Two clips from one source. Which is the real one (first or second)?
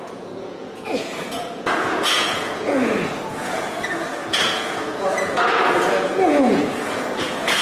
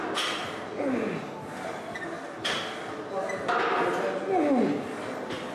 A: second